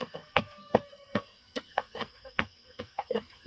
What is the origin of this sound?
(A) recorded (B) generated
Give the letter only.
B